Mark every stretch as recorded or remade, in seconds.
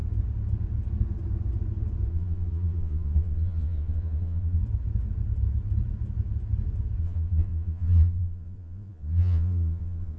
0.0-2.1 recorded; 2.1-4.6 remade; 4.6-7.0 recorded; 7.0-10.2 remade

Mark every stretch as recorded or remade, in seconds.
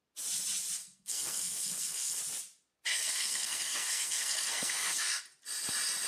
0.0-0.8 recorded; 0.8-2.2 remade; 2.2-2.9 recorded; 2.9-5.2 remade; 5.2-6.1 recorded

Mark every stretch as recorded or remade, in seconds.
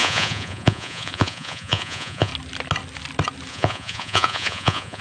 0.0-2.3 remade; 2.3-3.5 recorded; 3.5-5.0 remade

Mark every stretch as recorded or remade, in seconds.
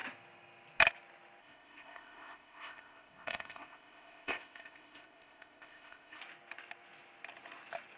0.0-1.4 recorded; 1.4-6.2 remade; 6.2-8.0 recorded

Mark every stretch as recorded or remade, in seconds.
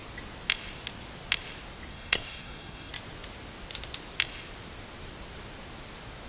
0.0-1.9 recorded; 1.9-2.9 remade; 2.9-6.3 recorded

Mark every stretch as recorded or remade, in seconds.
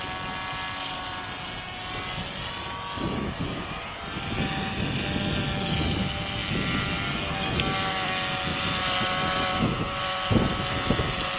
0.0-8.5 recorded; 8.5-11.4 remade